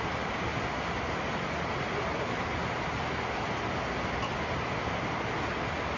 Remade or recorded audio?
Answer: recorded